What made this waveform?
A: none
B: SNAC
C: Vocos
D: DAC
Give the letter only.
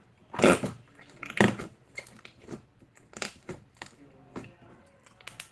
A